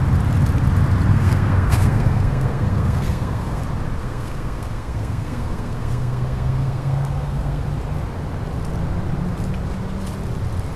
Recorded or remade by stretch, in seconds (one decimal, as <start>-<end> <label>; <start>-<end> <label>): 0.0-1.1 recorded; 1.1-3.6 remade; 3.6-4.0 recorded; 4.0-7.6 remade; 7.6-10.8 recorded